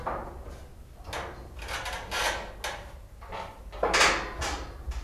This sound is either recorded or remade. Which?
recorded